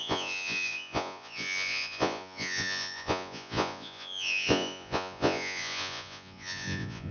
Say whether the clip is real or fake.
fake